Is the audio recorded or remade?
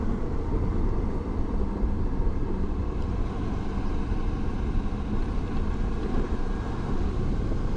remade